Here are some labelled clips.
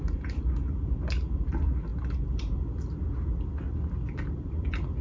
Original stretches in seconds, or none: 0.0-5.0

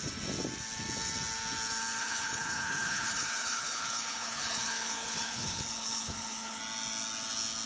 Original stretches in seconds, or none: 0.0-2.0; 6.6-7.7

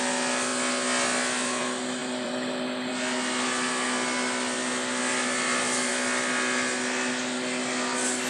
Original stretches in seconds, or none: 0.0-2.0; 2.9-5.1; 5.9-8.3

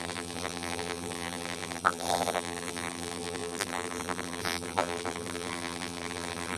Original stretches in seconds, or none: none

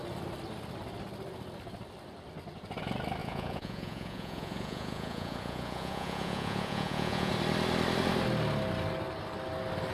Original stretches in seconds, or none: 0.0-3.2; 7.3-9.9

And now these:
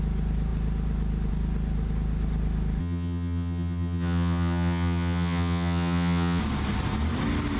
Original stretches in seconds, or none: 0.0-2.8; 6.4-7.6

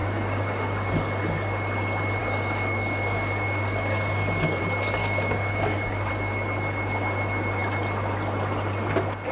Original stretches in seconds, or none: 0.9-2.2; 4.6-5.0; 6.1-9.3

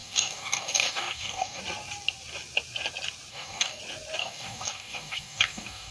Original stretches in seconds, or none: 1.6-3.3; 3.8-4.2